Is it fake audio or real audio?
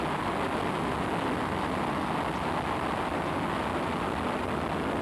real